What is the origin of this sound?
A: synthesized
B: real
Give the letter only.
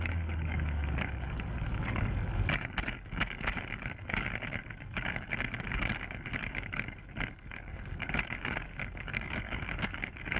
A